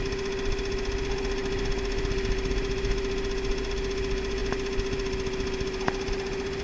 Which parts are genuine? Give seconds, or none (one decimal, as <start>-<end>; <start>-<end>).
0.0-6.6